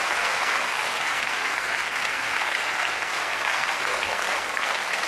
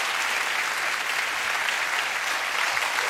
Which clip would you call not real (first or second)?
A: first